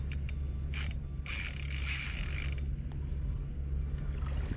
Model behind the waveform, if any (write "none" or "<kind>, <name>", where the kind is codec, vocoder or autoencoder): none